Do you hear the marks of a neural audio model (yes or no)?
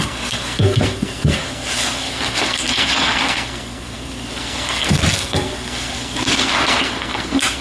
yes